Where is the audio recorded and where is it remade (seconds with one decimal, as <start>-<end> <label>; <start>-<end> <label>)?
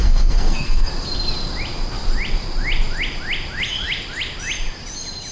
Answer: 0.0-0.9 remade; 0.9-5.3 recorded